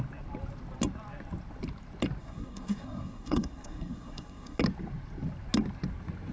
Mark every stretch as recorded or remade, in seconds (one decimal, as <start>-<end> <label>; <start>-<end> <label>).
0.0-2.2 recorded; 2.2-4.6 remade; 4.6-6.3 recorded